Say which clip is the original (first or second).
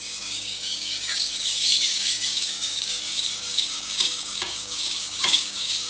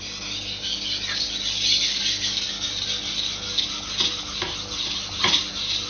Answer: second